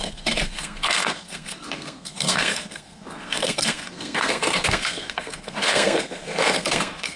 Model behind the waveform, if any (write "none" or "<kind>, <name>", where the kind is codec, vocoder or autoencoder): codec, SNAC